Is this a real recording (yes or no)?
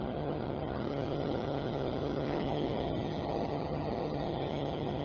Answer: no